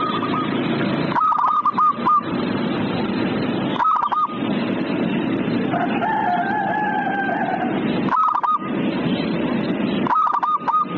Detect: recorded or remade recorded